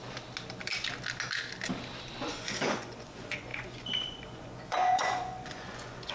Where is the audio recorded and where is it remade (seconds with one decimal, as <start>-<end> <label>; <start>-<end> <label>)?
0.0-2.3 recorded; 2.3-6.1 remade